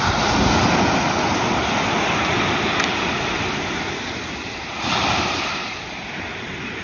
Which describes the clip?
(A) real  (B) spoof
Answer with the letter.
A